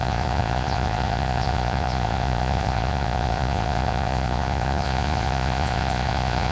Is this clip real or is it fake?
fake